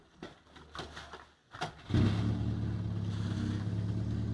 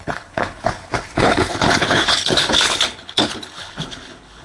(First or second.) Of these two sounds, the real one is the first